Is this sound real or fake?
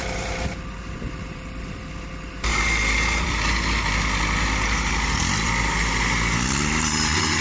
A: fake